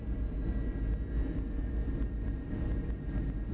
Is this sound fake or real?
real